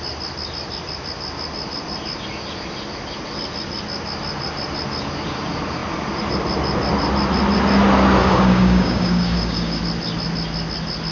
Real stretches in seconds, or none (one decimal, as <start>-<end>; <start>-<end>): 0.0-8.2; 9.8-11.1